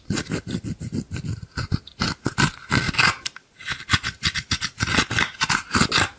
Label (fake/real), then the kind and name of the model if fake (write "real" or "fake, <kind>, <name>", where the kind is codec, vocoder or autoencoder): real